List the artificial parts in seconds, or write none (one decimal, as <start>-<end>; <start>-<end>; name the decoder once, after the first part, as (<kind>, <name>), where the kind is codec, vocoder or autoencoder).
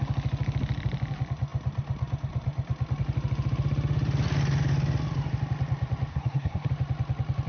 6.1-6.7 (codec, SNAC)